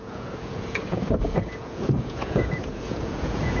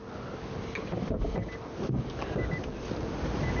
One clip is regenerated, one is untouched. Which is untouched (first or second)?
second